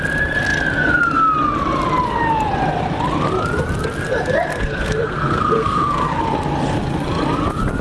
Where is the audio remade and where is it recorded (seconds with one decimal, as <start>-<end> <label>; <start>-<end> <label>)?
0.0-4.5 recorded; 4.5-6.2 remade; 6.2-7.8 recorded